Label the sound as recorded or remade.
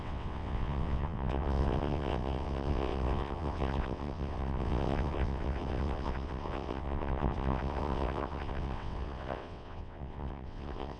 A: remade